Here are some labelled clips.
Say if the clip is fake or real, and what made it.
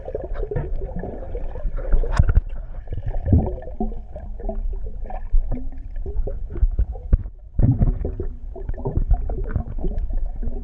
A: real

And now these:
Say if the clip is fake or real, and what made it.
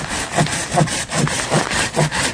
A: real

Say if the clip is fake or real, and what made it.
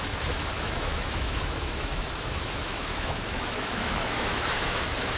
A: fake, autoencoder, DAC-VAE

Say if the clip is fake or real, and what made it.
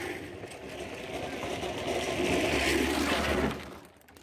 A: real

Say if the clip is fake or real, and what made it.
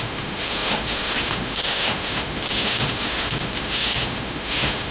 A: fake, autoencoder, DAC-VAE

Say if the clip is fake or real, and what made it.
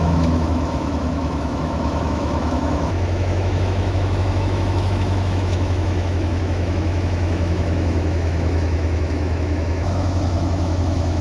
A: fake, autoencoder, DAC-VAE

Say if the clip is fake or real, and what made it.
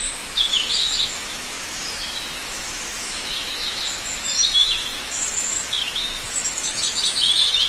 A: fake, autoencoder, DAC-VAE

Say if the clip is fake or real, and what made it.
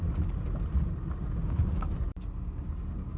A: real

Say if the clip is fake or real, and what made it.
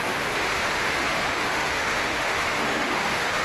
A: fake, autoencoder, DAC-VAE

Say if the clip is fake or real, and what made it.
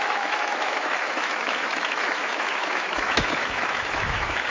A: fake, autoencoder, DAC-VAE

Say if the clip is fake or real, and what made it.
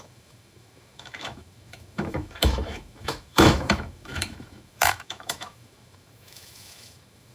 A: fake, autoencoder, DAC-VAE